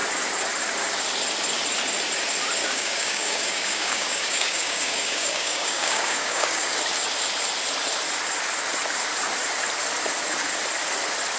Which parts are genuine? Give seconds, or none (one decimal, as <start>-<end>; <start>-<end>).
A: 0.0-2.6; 6.8-11.4

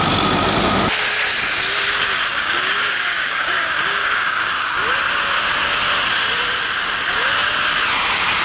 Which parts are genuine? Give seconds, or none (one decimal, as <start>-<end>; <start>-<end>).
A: 0.0-2.3; 4.8-8.4